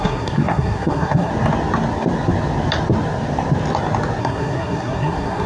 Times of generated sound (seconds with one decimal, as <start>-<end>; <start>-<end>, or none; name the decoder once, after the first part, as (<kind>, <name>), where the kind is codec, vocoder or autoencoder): 0.0-1.3 (codec, SNAC); 4.2-5.5